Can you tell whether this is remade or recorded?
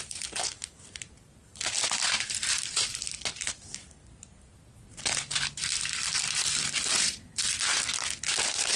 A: recorded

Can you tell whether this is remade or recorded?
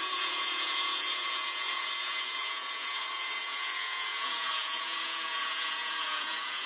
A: remade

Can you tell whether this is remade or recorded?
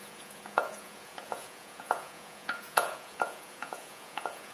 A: remade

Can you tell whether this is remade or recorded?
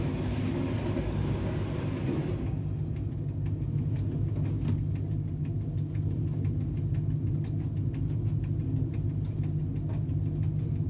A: recorded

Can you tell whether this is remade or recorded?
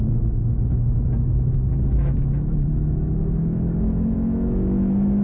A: remade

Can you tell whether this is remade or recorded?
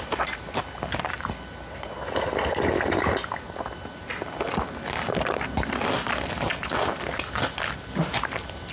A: recorded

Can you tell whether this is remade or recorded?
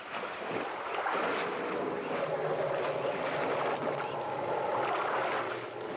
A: recorded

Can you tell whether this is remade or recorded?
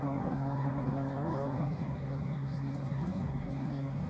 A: remade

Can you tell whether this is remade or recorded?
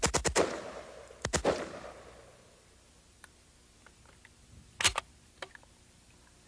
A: recorded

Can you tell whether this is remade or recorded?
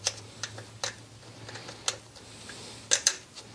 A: recorded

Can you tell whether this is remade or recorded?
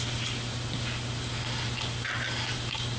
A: recorded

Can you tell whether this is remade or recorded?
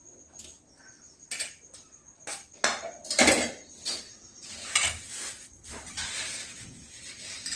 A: recorded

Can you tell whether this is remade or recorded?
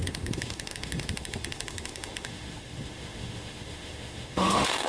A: remade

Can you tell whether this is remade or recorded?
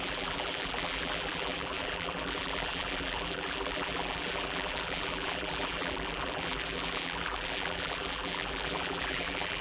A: remade